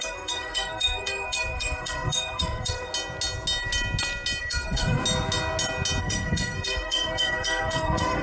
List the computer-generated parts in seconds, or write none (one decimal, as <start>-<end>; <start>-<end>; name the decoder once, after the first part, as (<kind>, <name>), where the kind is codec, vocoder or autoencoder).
0.0-2.9 (codec, SNAC); 4.4-5.0; 6.0-8.2